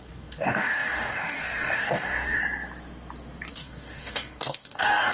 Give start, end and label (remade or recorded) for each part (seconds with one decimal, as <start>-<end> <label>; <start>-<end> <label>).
0.0-2.4 remade; 2.4-3.5 recorded; 3.5-5.1 remade